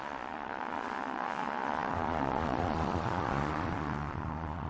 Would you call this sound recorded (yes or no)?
no